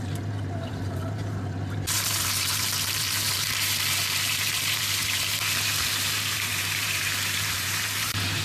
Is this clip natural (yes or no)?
no